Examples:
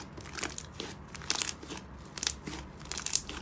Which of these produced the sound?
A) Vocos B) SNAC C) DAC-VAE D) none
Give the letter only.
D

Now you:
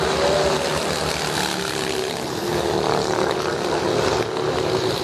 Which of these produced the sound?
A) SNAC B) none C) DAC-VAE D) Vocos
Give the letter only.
B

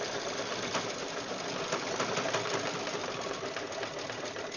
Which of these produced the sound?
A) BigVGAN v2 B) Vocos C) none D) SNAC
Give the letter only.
A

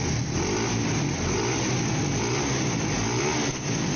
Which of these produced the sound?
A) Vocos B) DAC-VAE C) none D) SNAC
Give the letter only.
C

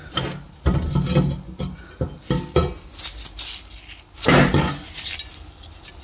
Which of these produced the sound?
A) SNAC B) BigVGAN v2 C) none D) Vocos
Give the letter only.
C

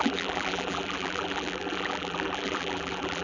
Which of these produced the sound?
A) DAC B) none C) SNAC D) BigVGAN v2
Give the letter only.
D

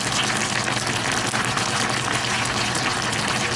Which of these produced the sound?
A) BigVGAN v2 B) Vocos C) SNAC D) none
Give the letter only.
D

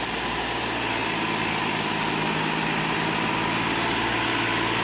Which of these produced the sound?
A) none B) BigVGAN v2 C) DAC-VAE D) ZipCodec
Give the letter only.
A